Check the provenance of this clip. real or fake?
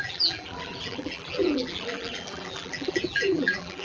fake